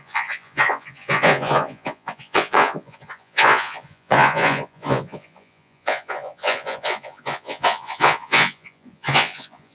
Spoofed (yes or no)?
yes